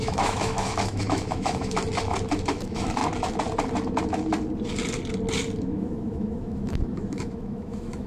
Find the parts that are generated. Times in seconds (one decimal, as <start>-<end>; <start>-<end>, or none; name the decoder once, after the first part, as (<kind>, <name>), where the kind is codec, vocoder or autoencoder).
0.0-1.8 (autoencoder, DAC-VAE); 2.5-3.0; 5.6-8.1